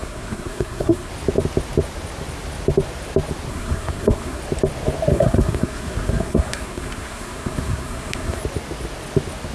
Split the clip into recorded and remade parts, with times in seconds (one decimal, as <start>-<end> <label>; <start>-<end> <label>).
0.0-1.1 remade; 1.1-3.5 recorded; 3.5-4.4 remade; 4.4-5.1 recorded; 5.1-8.4 remade; 8.4-9.5 recorded